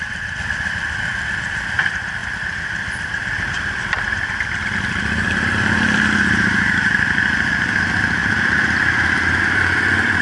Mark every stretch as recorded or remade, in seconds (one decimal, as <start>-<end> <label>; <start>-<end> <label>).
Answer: 0.0-8.2 remade; 8.2-9.4 recorded; 9.4-10.2 remade